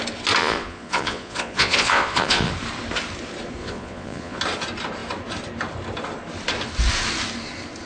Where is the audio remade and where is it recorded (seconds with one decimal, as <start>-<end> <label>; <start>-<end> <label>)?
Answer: 0.0-0.4 recorded; 0.4-2.5 remade; 2.5-3.6 recorded; 3.6-4.4 remade; 4.4-7.9 recorded